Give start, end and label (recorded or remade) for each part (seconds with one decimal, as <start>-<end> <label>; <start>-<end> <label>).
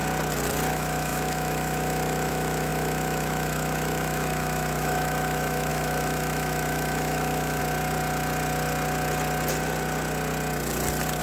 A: 0.0-0.7 recorded; 0.7-7.6 remade; 7.6-11.2 recorded